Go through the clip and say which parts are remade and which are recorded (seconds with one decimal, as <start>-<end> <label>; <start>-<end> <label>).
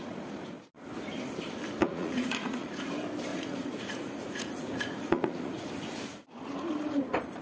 0.0-1.8 recorded; 1.8-2.9 remade; 2.9-3.3 recorded; 3.3-5.7 remade; 5.7-7.4 recorded